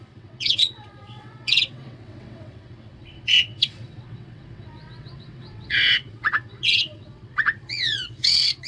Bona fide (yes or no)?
no